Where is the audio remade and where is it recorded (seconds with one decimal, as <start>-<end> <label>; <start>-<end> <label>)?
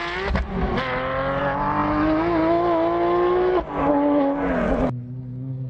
0.0-5.7 recorded